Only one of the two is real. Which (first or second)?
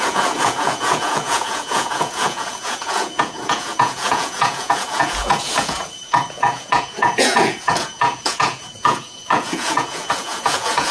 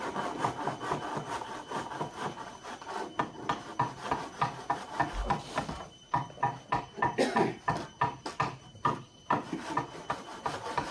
second